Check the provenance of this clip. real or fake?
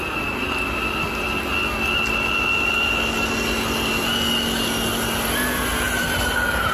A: real